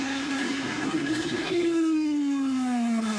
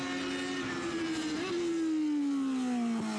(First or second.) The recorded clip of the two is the second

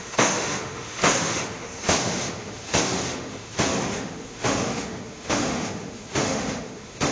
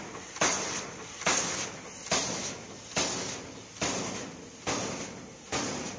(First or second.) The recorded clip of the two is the second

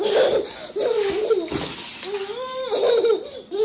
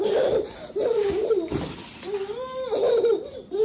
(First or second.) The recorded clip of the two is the first